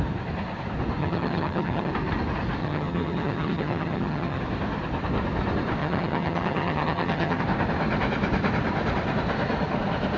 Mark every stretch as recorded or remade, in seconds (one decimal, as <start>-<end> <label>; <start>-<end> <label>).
0.0-1.0 recorded; 1.0-1.9 remade; 1.9-2.6 recorded; 2.6-4.4 remade; 4.4-5.8 recorded; 5.8-7.4 remade; 7.4-10.2 recorded